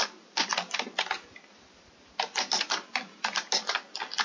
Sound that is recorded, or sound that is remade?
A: recorded